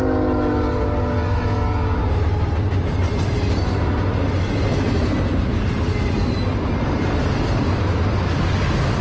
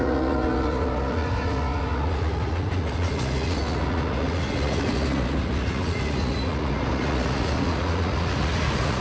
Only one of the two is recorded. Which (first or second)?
first